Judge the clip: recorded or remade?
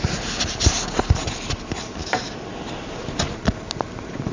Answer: recorded